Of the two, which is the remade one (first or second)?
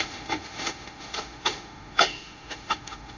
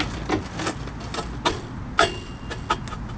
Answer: first